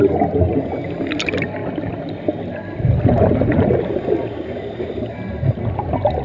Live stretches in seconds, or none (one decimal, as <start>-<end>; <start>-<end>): 0.0-6.2